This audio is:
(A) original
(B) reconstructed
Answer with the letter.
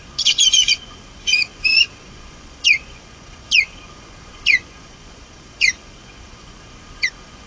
B